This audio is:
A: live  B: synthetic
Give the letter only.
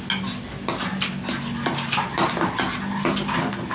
A